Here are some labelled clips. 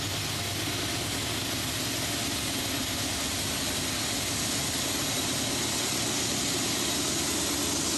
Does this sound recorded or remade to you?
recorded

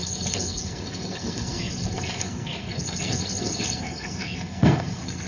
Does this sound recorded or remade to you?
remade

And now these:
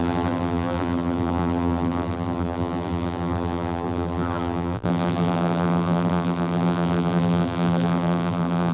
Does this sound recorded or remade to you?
remade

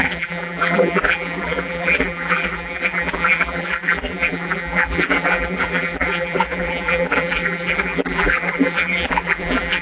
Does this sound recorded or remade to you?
remade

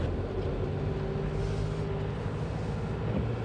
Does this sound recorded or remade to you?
recorded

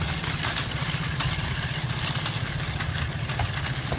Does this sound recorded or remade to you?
recorded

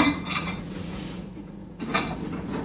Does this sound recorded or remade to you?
remade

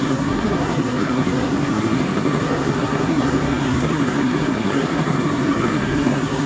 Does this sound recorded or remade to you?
remade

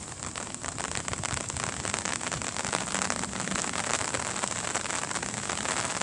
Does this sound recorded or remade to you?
recorded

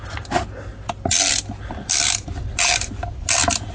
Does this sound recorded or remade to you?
recorded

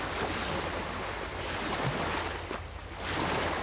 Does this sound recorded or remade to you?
recorded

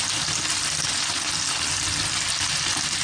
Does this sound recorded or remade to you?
recorded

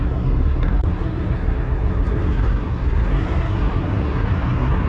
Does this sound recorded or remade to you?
remade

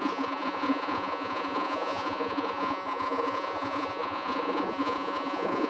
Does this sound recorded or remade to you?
remade